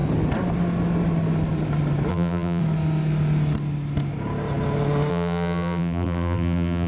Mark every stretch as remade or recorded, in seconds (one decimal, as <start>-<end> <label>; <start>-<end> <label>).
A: 0.0-2.1 recorded; 2.1-2.6 remade; 2.6-5.1 recorded; 5.1-6.9 remade